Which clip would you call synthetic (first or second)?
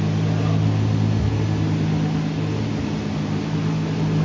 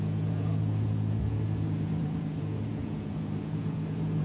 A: second